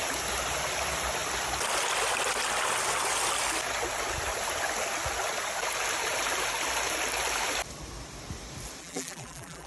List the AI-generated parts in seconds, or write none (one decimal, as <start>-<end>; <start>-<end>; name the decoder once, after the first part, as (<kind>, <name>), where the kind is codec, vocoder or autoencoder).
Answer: 8.8-9.7 (vocoder, BigVGAN v2)